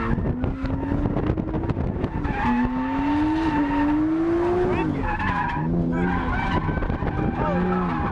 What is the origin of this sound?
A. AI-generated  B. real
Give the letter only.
B